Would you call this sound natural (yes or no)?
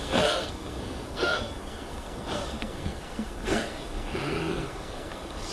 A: no